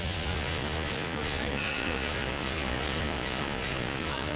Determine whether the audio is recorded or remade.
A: remade